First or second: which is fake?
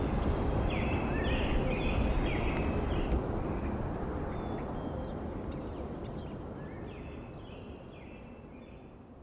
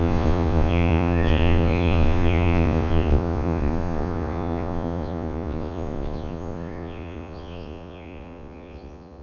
second